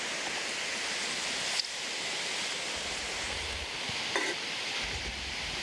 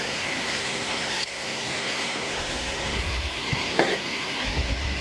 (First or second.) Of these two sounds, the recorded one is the first